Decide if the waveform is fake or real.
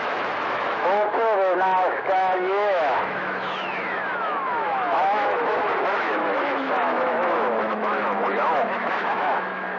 fake